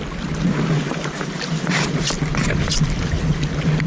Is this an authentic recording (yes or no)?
yes